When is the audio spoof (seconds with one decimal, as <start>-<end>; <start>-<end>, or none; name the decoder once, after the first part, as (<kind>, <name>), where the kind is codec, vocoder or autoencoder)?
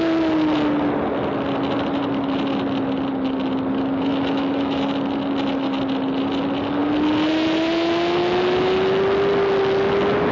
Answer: 4.1-4.8 (autoencoder, DAC-VAE)